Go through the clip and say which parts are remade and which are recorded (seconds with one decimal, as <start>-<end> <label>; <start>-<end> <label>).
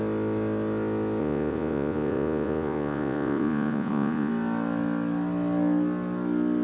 0.0-1.2 recorded; 1.2-4.3 remade; 4.3-6.6 recorded